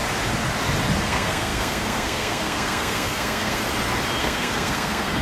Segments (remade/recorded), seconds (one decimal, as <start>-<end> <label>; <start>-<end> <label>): 0.0-1.0 recorded; 1.0-3.6 remade; 3.6-4.2 recorded; 4.2-5.2 remade